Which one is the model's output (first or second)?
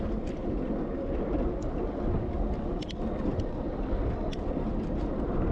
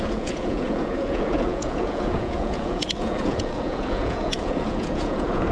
second